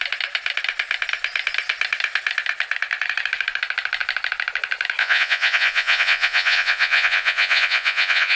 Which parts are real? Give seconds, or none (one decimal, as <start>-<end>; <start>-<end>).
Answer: 0.0-5.0

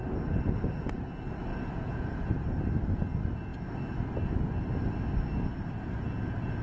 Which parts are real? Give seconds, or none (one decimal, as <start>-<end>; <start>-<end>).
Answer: 0.0-1.5; 2.3-6.6

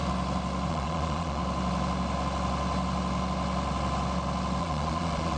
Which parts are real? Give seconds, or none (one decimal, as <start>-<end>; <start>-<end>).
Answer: 0.0-0.7; 1.4-4.6

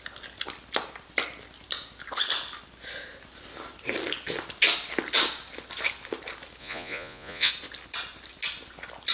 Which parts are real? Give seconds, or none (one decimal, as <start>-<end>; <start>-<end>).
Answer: 0.0-6.6; 7.5-9.1

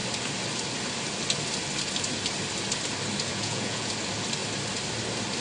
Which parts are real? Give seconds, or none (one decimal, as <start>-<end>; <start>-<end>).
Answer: 0.0-3.3; 3.9-5.4

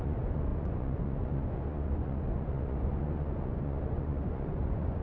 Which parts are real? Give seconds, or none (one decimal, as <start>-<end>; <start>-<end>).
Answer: none

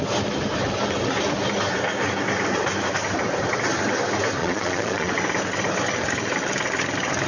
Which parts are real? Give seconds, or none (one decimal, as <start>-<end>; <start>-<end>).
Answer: 0.0-4.4; 5.1-7.3